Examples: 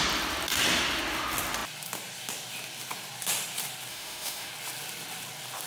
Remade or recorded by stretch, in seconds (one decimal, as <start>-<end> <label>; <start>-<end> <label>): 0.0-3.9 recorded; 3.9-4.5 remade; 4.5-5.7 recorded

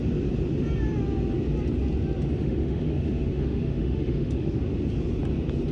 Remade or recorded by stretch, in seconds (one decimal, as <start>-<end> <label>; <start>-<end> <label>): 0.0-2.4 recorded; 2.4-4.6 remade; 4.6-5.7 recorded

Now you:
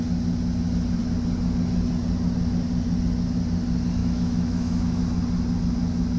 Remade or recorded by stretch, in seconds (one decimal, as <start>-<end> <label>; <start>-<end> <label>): 0.0-4.0 recorded; 4.0-5.0 remade; 5.0-6.2 recorded

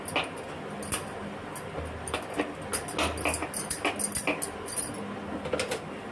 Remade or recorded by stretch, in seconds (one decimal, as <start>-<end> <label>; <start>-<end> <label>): 0.0-6.1 recorded

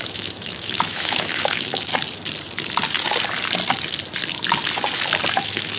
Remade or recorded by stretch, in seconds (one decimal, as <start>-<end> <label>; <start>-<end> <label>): 0.0-1.9 remade; 1.9-5.3 recorded; 5.3-5.8 remade

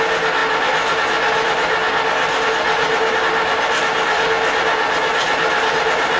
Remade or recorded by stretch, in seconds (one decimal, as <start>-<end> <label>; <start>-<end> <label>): 0.0-6.2 recorded